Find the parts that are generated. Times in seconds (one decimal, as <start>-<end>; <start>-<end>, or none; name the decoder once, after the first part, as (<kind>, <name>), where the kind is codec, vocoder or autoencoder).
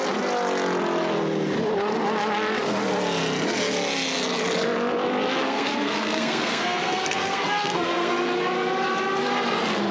5.4-8.1 (codec, SNAC)